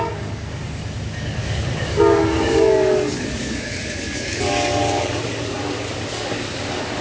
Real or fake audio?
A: fake